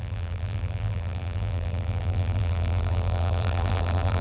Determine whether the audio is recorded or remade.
remade